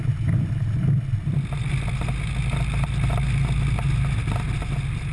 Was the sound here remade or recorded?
recorded